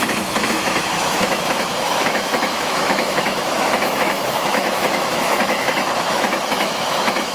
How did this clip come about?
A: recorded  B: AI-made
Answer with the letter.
B